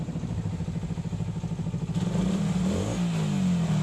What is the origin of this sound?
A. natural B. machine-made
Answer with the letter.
A